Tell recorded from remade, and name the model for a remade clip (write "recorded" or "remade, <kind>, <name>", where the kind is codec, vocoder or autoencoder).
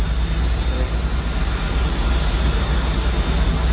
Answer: recorded